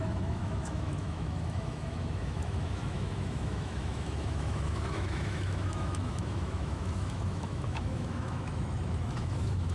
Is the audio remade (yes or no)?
yes